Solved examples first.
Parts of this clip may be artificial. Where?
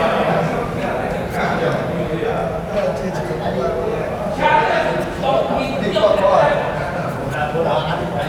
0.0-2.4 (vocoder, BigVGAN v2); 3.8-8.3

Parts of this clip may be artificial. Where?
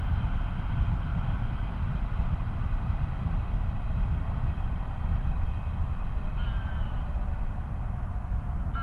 none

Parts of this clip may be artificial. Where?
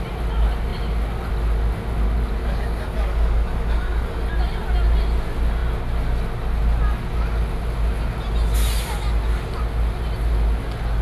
2.4-4.3 (codec, DAC)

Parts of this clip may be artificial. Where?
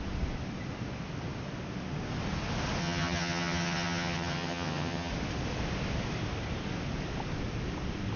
2.8-5.1 (vocoder, HiFi-GAN)